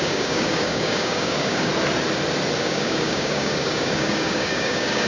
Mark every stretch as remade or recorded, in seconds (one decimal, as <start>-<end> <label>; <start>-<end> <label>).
0.0-1.7 remade; 1.7-2.6 recorded; 2.6-5.1 remade